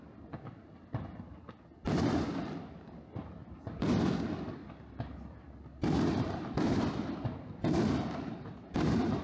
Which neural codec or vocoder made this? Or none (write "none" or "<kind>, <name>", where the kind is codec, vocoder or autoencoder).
none